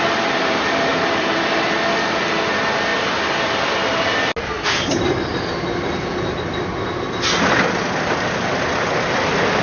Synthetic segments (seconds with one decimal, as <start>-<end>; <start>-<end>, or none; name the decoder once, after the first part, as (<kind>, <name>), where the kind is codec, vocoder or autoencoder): 0.9-1.6 (vocoder, BigVGAN v2)